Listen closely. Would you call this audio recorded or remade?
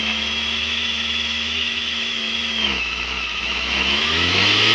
remade